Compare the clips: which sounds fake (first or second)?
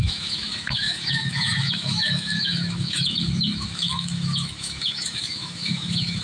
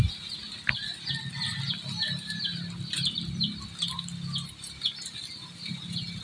first